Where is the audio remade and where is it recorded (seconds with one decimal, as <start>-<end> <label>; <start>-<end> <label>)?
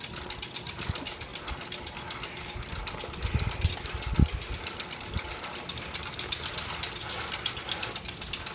0.0-8.5 recorded